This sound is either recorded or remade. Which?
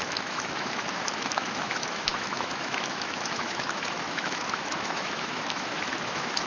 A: remade